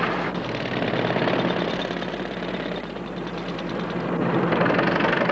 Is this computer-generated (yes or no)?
no